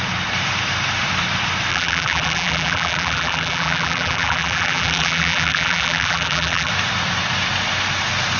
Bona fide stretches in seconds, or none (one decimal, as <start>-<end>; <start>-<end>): 0.0-1.7; 6.7-8.4